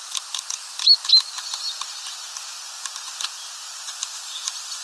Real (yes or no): yes